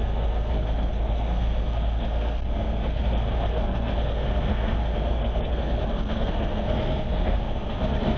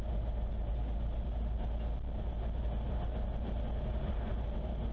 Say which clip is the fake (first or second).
first